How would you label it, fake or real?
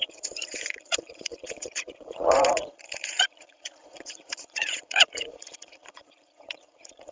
fake